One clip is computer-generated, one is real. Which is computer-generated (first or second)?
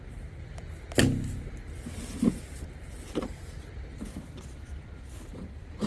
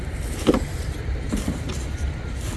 second